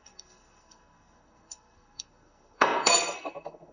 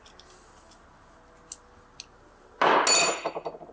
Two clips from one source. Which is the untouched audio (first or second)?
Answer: second